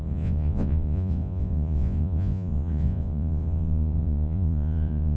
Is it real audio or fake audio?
fake